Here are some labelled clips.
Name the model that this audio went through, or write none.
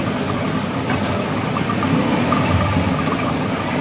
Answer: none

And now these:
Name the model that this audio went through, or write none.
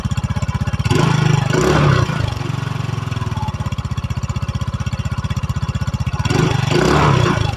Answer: none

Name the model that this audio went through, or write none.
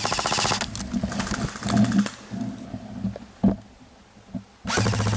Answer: none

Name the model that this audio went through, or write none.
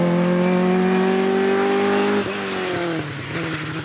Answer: none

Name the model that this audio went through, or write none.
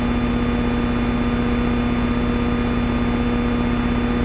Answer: none